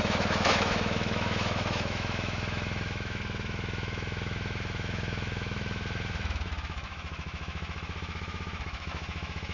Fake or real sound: fake